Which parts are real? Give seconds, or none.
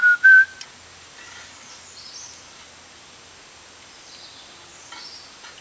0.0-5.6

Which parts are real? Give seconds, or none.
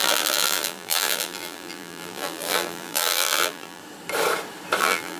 3.8-4.8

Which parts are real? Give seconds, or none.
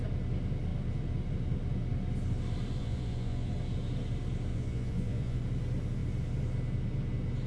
0.0-2.8; 3.5-4.5; 5.4-7.5